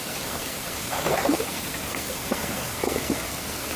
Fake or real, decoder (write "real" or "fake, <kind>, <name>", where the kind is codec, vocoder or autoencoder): fake, codec, SNAC